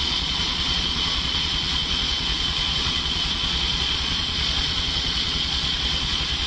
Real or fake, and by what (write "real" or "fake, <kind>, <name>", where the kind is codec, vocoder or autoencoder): fake, vocoder, Vocos